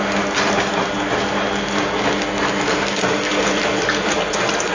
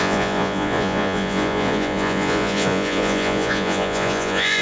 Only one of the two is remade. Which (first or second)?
second